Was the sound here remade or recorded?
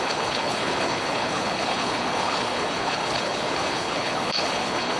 remade